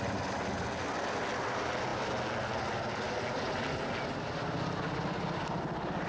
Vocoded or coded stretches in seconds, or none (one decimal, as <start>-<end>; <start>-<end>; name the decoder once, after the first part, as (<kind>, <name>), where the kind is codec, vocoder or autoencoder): none